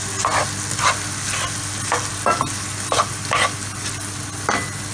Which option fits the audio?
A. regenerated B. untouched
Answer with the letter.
B